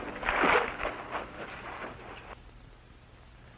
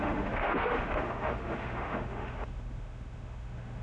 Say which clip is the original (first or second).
first